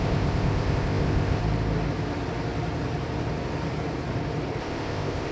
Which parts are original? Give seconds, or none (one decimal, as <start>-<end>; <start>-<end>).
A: 1.4-4.6